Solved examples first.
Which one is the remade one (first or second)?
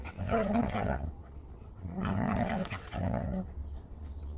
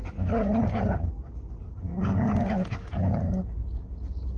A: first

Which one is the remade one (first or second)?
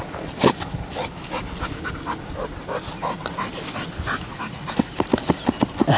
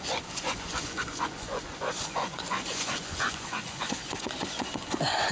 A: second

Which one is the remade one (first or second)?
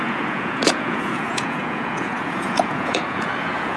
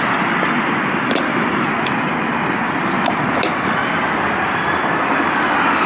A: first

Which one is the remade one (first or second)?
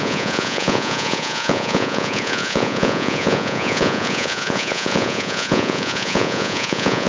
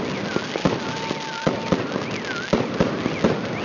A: first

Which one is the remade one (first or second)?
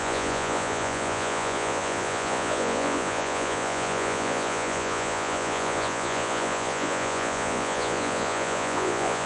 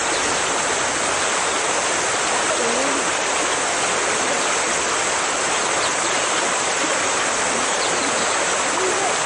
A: first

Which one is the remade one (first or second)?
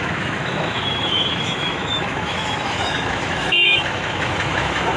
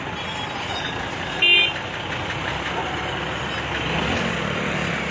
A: first